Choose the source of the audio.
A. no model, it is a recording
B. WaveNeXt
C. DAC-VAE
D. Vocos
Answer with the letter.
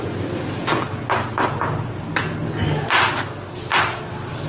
A